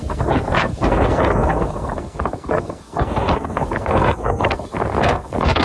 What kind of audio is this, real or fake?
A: fake